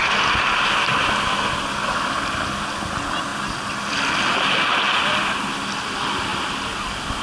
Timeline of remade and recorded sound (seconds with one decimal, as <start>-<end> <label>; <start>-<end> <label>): 0.0-7.2 recorded